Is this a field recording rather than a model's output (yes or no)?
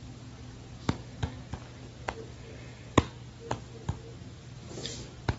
yes